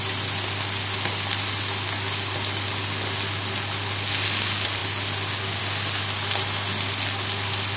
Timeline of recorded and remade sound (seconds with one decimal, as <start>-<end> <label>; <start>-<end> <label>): 0.0-7.8 recorded